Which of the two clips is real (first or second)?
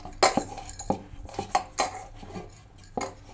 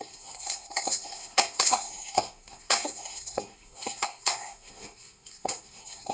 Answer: first